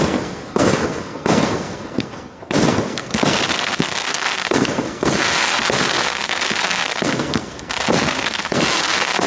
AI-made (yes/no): yes